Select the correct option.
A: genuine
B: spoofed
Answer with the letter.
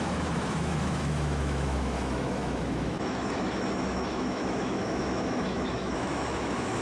B